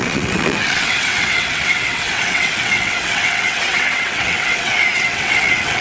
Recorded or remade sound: remade